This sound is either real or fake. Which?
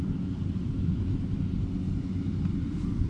real